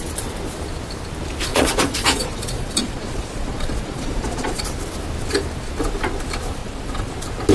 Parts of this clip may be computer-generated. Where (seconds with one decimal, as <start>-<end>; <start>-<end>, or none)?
1.5-4.6; 6.6-7.1